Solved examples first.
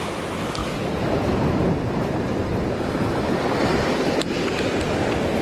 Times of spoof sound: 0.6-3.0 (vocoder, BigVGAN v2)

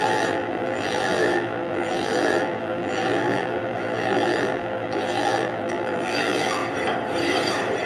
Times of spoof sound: 0.0-6.6 (vocoder, BigVGAN v2)

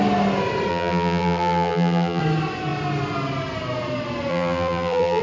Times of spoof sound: 0.7-2.2 (vocoder, BigVGAN v2); 4.3-5.2

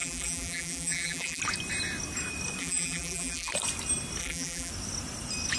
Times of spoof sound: 0.0-1.4 (vocoder, BigVGAN v2); 2.6-3.5; 4.2-4.7